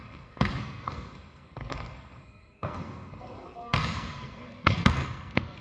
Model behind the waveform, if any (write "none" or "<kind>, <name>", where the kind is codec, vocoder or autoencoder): codec, SNAC